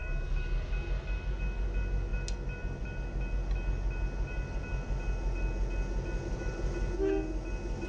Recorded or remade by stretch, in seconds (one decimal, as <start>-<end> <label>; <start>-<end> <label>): 0.0-7.9 recorded